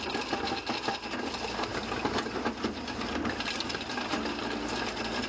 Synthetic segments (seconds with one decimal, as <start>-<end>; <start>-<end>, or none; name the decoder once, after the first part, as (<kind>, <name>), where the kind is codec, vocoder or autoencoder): none